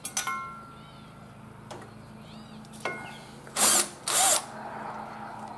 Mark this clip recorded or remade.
recorded